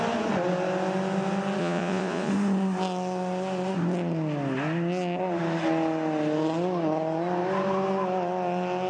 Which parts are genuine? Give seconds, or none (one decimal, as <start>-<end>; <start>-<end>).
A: 0.0-1.6; 2.3-8.9